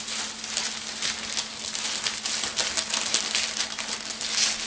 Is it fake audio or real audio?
real